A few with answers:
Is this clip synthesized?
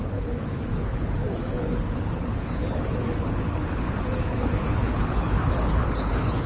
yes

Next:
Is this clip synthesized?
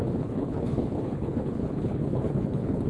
yes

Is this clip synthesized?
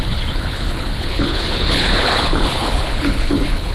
yes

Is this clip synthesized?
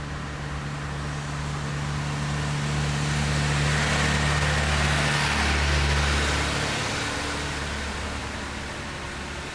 no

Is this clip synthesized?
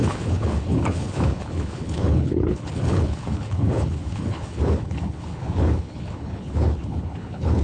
yes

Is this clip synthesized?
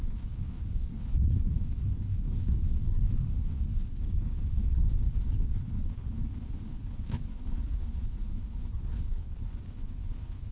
yes